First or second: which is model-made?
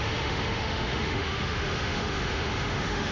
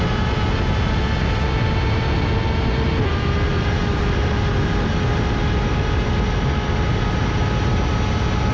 first